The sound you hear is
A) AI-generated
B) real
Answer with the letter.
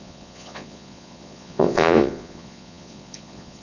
A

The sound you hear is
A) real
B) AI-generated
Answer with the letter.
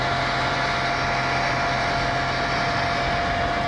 A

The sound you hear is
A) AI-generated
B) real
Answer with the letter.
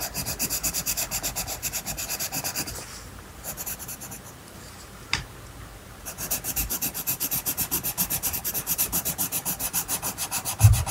A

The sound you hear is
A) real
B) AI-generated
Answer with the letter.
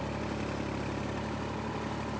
A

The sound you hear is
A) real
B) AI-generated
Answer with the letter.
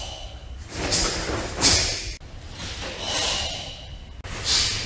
A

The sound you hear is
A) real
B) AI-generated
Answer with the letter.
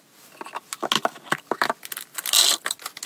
A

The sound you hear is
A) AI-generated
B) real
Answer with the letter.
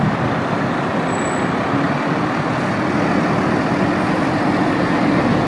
B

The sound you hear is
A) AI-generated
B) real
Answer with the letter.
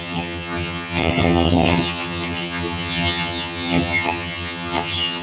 A